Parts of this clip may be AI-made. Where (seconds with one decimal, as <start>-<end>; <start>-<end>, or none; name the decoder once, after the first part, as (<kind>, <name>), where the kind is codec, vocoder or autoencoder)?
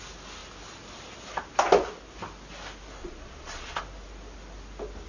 3.0-3.8 (vocoder, Vocos)